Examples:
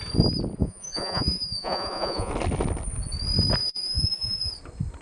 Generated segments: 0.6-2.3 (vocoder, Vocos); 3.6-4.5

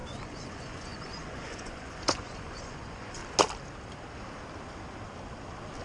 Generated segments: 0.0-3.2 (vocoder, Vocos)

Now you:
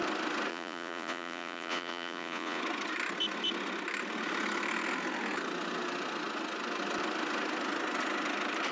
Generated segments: 0.5-2.6 (vocoder, Vocos)